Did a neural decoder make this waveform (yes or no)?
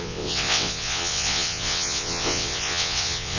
yes